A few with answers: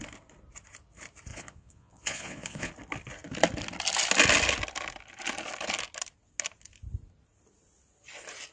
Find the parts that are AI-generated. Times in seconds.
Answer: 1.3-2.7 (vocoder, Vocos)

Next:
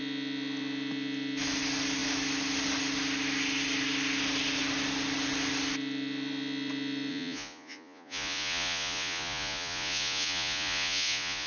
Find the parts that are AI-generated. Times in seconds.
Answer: 7.1-11.5 (vocoder, Vocos)

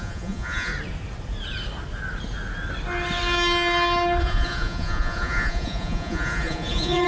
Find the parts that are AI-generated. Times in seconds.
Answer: 0.0-0.7 (vocoder, Vocos); 4.2-7.1

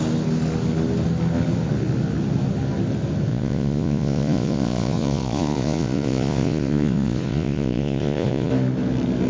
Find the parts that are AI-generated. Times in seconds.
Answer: 3.3-8.5 (vocoder, Vocos)